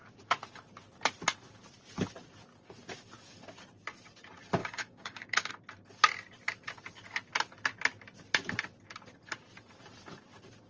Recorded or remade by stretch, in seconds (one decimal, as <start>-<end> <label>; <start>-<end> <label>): 0.0-4.6 recorded; 4.6-5.5 remade; 5.5-10.7 recorded